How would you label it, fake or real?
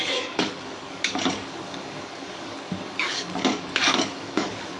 fake